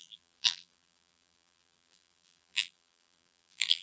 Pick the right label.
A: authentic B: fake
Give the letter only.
B